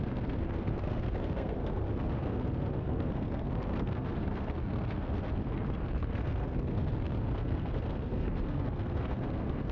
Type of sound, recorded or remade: remade